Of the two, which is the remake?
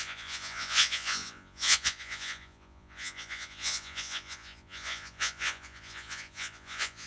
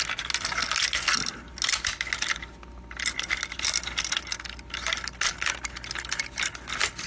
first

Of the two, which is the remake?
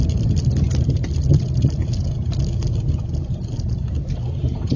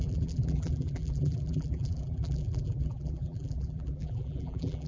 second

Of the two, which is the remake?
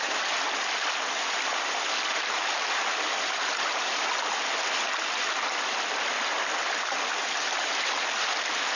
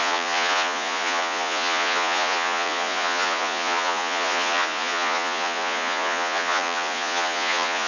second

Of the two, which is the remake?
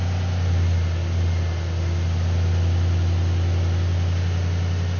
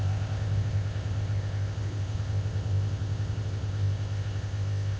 second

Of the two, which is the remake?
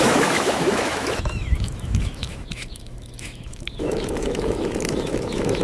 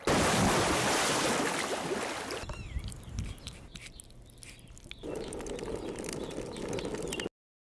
first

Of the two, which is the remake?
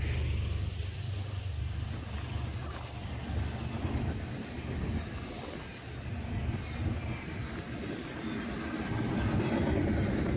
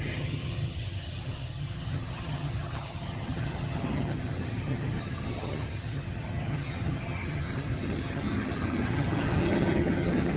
second